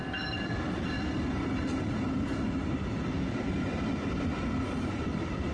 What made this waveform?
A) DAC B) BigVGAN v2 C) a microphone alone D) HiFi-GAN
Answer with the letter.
B